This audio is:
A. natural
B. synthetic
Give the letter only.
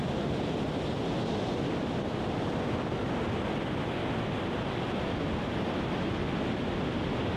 A